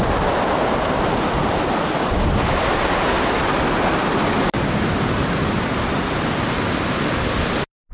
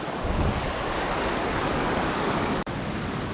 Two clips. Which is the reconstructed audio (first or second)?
second